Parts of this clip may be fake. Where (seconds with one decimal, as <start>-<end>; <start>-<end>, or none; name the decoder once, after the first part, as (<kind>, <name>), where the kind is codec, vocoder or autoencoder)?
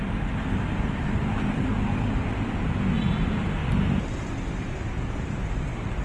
0.0-3.6 (vocoder, BigVGAN v2); 4.6-6.0